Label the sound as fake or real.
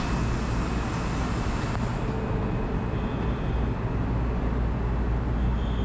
real